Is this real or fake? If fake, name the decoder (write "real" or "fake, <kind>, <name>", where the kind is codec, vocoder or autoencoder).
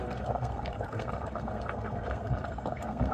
fake, codec, SNAC